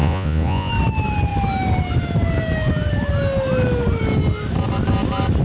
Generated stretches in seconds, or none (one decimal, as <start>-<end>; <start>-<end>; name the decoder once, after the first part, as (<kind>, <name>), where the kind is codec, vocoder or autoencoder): 0.0-0.7 (vocoder, Vocos)